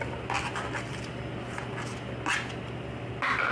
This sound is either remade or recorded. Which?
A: recorded